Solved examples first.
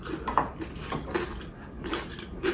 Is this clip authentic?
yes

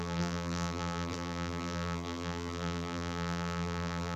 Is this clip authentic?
no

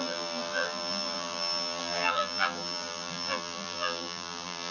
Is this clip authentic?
no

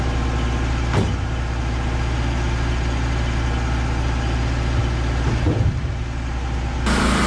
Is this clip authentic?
yes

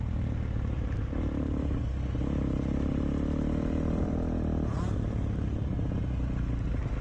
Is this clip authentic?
yes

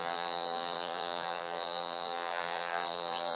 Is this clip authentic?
no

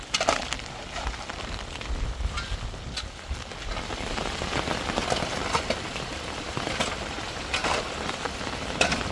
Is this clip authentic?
yes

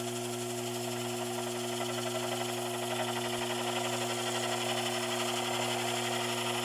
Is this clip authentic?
yes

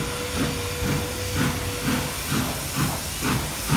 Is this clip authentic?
yes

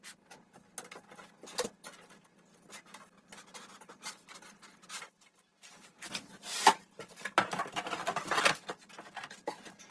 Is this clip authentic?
yes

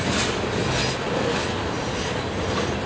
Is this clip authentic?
yes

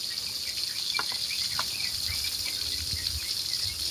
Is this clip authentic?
yes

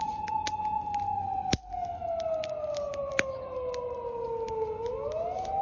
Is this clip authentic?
yes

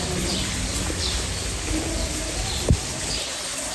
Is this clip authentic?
no